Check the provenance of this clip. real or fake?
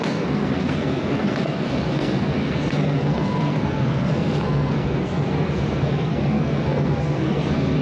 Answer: fake